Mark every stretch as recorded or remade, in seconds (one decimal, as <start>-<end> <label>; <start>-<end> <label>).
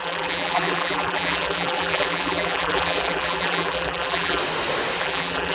0.0-4.4 remade; 4.4-5.0 recorded; 5.0-5.5 remade